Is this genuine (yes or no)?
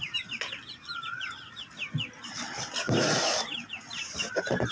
no